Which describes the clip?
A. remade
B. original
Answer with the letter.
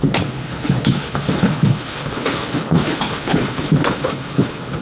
A